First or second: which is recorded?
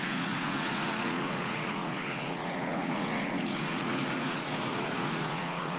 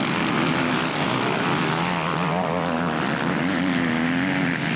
second